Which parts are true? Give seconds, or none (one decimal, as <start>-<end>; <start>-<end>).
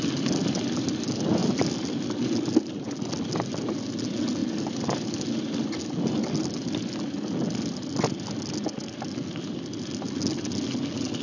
0.0-11.2